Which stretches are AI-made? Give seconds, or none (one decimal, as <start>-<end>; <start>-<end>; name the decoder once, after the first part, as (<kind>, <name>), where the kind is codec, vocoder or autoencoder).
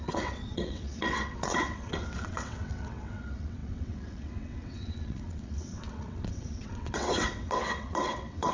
0.0-8.5 (vocoder, WaveNeXt)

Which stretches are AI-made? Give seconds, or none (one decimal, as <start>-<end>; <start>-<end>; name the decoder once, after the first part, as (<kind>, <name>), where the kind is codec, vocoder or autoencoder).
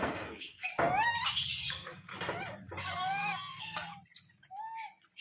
0.0-0.7 (codec, SNAC); 1.7-2.1; 2.8-3.9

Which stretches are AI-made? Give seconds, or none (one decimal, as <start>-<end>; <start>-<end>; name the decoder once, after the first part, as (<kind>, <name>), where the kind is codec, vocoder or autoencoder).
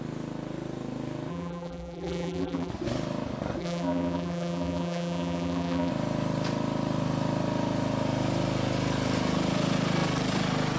1.3-2.7 (vocoder, BigVGAN v2); 3.6-5.9